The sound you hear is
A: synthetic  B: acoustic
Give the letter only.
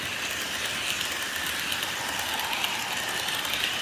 B